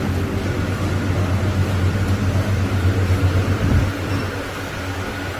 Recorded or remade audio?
recorded